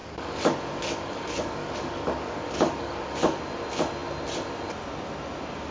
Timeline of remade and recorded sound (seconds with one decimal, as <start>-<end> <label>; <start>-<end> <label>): 0.0-3.4 remade; 3.4-5.7 recorded